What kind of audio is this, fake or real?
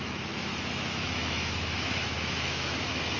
fake